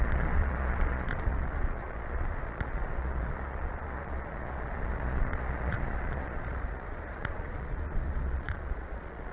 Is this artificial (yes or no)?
yes